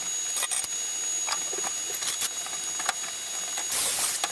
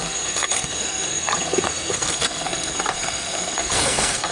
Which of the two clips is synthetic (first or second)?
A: second